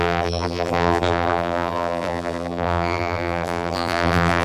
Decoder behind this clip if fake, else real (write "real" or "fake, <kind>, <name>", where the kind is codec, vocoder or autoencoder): fake, vocoder, BigVGAN v2